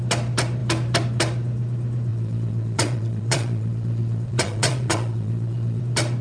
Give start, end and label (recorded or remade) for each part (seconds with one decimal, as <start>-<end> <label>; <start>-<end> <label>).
0.0-2.1 recorded; 2.1-5.8 remade; 5.8-6.2 recorded